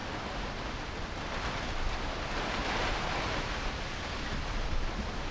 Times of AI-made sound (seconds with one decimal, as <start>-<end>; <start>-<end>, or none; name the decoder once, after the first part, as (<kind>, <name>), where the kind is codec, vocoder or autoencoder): 1.3-2.6 (vocoder, BigVGAN v2); 3.4-5.3